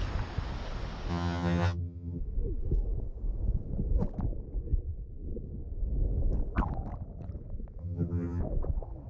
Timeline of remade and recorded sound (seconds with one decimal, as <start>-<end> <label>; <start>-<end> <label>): 0.0-1.1 recorded; 1.1-2.2 remade; 2.2-7.8 recorded; 7.8-8.4 remade; 8.4-9.1 recorded